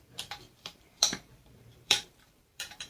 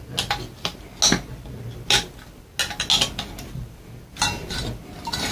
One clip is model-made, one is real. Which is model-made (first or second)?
first